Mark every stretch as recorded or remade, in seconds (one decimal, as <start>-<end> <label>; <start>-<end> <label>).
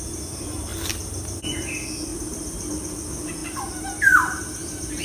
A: 0.0-2.1 recorded; 2.1-2.7 remade; 2.7-3.4 recorded; 3.4-4.4 remade; 4.4-5.0 recorded